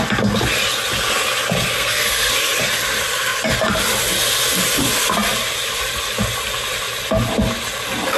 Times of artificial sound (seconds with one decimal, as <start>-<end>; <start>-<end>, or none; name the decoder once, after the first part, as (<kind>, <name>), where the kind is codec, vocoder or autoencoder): 1.6-2.3 (codec, SNAC)